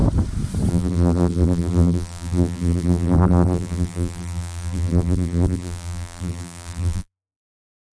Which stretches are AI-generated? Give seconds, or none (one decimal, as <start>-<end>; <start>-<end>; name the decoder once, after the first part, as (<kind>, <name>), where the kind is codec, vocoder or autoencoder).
0.7-7.9 (vocoder, BigVGAN v2)